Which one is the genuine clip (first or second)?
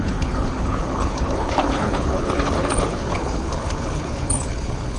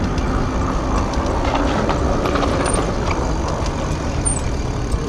second